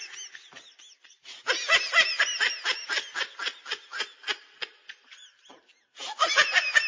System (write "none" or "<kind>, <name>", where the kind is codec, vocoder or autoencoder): none